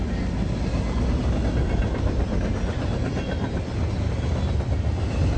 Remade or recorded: recorded